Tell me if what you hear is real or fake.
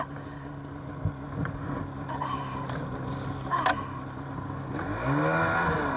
real